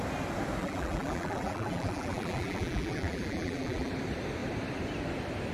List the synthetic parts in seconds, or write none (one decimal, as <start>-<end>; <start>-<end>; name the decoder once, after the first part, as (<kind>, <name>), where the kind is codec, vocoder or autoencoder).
0.6-3.9 (vocoder, BigVGAN v2)